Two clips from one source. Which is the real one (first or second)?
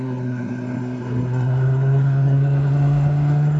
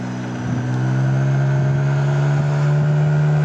second